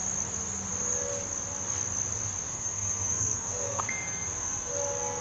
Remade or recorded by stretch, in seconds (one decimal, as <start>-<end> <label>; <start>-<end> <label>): 0.0-2.5 recorded; 2.5-4.7 remade; 4.7-5.2 recorded